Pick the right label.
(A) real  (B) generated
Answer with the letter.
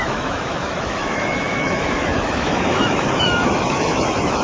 B